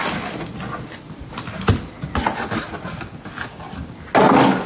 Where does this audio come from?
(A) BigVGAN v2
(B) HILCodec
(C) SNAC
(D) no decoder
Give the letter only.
D